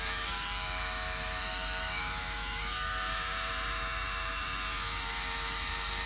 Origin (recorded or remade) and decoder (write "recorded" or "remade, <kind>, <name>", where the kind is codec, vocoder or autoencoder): remade, autoencoder, DAC-VAE